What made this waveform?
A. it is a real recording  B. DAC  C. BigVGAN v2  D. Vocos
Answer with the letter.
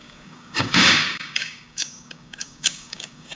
B